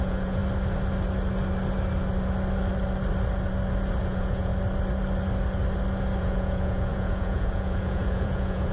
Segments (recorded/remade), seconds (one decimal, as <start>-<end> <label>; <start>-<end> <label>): 0.0-0.4 remade; 0.4-4.0 recorded; 4.0-4.5 remade; 4.5-6.2 recorded; 6.2-8.7 remade